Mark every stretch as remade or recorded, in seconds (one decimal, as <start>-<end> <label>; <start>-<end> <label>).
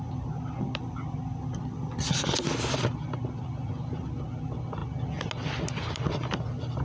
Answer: 0.0-6.8 recorded